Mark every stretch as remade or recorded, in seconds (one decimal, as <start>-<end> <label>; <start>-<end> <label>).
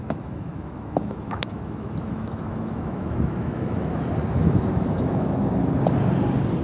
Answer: 0.0-4.0 remade; 4.0-4.4 recorded; 4.4-5.6 remade; 5.6-6.6 recorded